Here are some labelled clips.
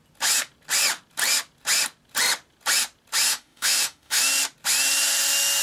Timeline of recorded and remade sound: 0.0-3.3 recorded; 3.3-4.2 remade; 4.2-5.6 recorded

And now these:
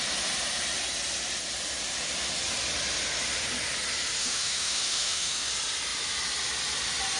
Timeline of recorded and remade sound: 0.0-4.2 recorded; 4.2-5.5 remade; 5.5-7.2 recorded